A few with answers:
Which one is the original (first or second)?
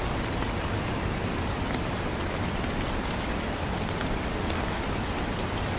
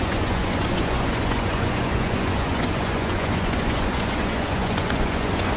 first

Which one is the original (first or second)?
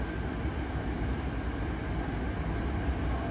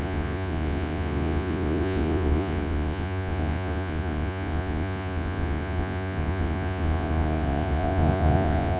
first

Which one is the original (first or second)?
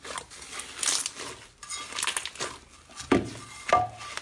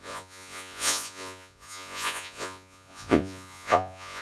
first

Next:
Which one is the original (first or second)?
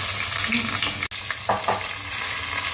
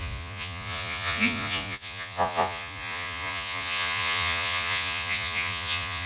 first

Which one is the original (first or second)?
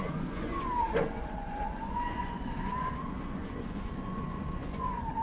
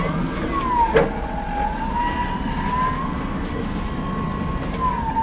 second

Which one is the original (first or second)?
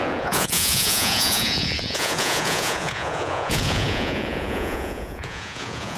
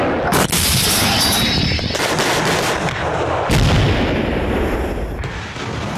second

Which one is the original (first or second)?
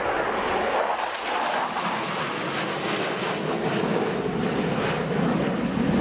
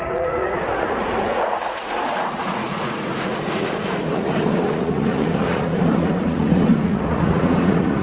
first